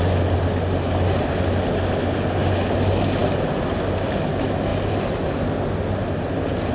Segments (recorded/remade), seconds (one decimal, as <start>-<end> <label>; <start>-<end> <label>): 0.0-6.7 recorded